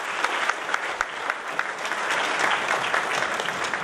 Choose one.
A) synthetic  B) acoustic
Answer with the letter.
B